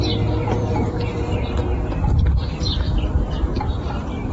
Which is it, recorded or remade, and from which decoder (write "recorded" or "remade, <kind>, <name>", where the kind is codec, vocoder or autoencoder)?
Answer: recorded